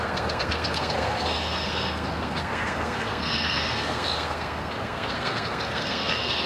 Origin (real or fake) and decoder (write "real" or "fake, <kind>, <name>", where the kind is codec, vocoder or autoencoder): fake, codec, SNAC